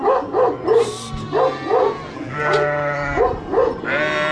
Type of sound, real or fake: real